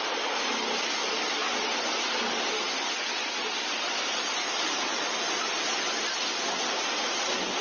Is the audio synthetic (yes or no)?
no